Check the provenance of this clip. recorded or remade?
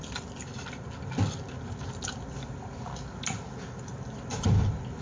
recorded